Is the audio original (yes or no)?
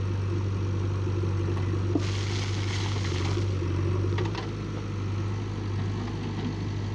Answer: yes